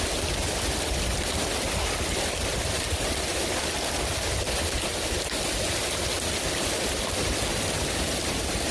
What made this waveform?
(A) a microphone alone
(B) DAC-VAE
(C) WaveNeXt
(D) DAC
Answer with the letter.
A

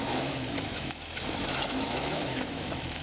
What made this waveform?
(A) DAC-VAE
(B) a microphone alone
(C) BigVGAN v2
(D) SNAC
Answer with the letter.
A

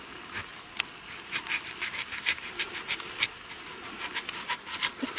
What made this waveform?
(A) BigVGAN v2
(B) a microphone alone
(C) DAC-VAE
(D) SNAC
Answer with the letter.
B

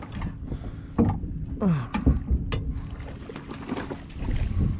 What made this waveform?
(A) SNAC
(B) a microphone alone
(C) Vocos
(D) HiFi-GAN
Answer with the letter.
B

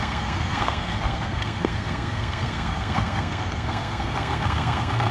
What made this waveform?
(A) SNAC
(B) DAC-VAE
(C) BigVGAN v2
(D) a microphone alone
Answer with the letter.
A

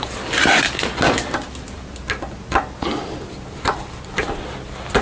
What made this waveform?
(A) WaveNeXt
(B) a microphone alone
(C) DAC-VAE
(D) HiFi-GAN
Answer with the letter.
B